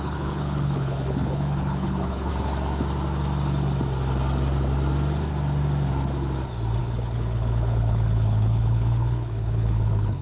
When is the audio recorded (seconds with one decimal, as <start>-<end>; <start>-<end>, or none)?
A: 2.3-6.8